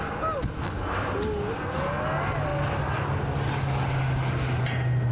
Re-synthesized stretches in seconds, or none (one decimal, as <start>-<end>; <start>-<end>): none